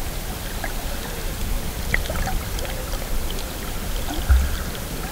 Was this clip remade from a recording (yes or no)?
no